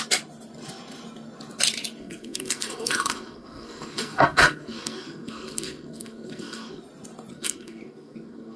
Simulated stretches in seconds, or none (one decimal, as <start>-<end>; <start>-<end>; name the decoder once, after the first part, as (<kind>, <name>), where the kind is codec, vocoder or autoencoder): 2.0-6.8 (codec, SNAC); 7.3-8.6